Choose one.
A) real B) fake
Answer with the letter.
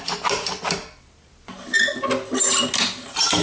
A